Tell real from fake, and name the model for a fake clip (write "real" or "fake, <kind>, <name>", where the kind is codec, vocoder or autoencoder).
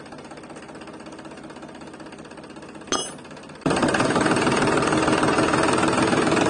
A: real